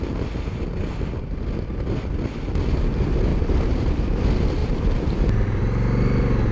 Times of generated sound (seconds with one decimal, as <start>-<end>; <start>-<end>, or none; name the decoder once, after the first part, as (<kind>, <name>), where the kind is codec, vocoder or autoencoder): 3.3-3.9 (vocoder, BigVGAN v2); 4.6-5.6